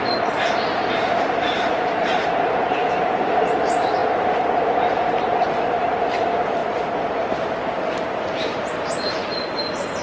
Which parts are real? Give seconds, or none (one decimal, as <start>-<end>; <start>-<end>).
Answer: 0.0-0.7; 3.4-9.2